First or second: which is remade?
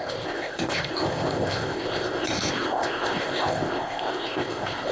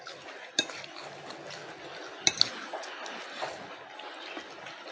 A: first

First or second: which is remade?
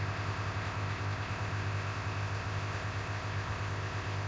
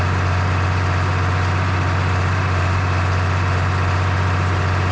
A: first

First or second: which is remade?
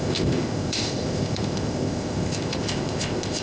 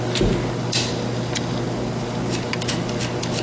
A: first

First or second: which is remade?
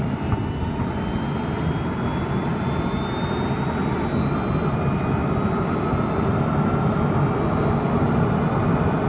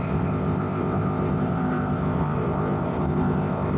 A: second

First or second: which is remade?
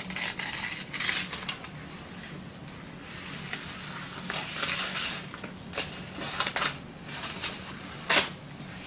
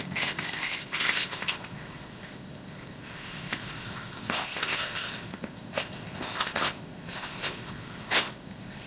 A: second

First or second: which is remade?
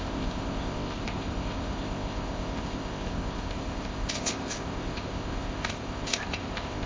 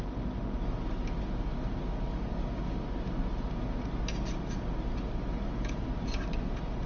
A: first